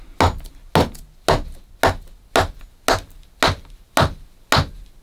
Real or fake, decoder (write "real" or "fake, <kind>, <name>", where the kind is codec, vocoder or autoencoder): real